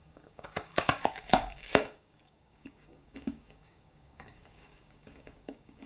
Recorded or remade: remade